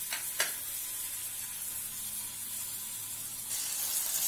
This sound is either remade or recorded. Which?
recorded